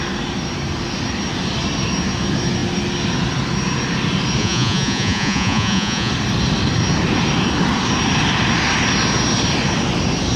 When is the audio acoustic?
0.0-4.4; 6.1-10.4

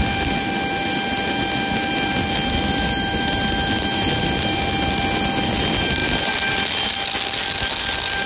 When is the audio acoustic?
0.0-8.3

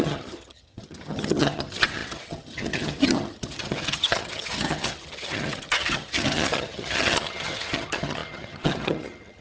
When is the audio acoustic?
none